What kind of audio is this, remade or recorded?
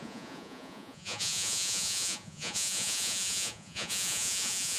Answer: remade